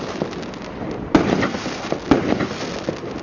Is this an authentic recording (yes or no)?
yes